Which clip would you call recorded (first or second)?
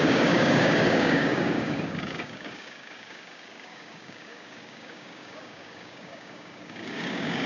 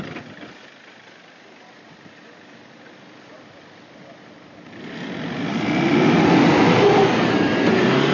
second